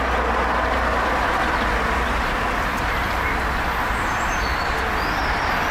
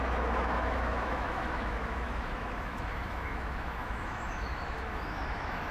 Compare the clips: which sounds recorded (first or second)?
first